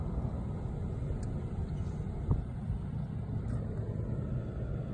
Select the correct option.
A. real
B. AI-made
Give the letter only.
A